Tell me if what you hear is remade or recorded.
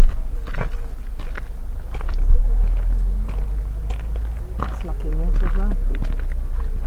recorded